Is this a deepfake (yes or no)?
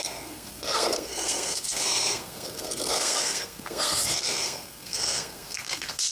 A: yes